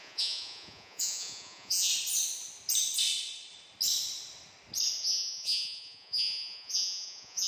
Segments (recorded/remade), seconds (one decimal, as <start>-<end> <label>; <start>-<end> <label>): 0.0-1.9 remade; 1.9-5.0 recorded; 5.0-7.5 remade